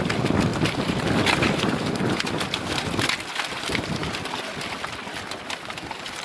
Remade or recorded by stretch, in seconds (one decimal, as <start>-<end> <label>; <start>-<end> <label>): 0.0-4.0 remade; 4.0-5.4 recorded; 5.4-6.2 remade